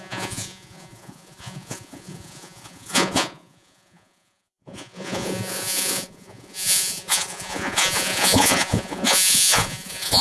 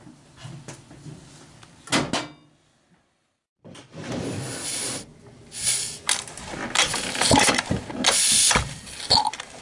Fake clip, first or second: first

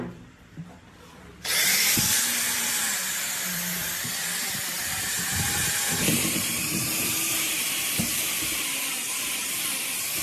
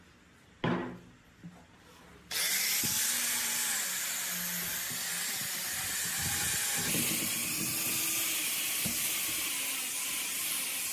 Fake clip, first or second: first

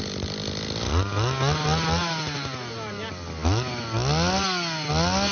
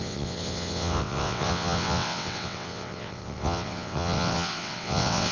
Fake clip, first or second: second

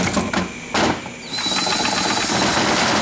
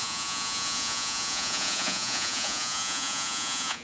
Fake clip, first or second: second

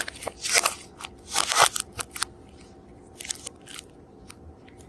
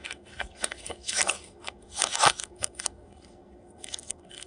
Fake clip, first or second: second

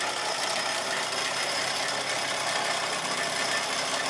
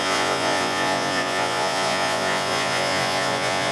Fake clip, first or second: second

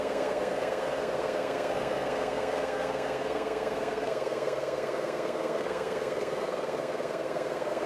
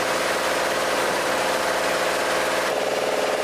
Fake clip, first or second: first